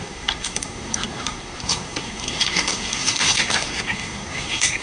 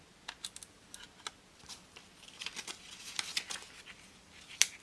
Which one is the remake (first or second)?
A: first